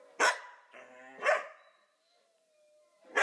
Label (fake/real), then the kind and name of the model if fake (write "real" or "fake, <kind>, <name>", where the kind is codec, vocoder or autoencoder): real